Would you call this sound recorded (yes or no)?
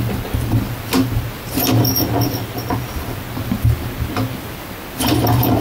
yes